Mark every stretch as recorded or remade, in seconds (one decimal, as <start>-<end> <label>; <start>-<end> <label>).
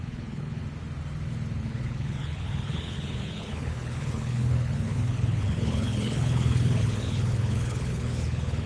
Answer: 0.0-0.6 remade; 0.6-1.6 recorded; 1.6-8.7 remade